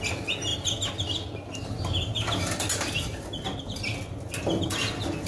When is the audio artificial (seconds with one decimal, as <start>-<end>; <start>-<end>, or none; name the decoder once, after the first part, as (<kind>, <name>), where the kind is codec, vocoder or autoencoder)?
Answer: none